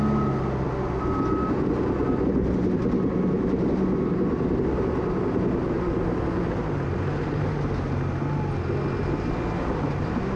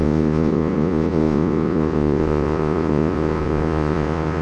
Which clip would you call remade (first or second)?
second